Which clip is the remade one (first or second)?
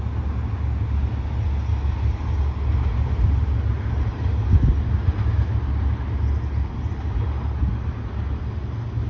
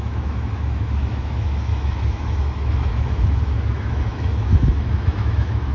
second